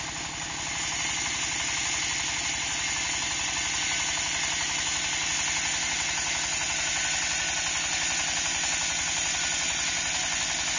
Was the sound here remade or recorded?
recorded